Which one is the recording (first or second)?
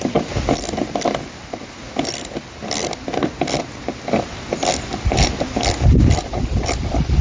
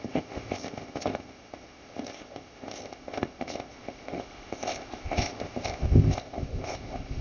first